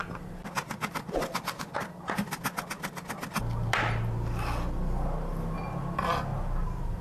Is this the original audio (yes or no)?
yes